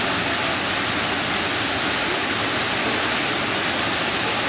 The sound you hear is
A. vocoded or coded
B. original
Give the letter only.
B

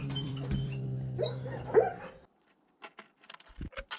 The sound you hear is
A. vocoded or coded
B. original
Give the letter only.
A